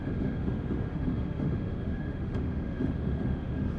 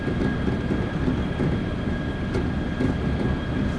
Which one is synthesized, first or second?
first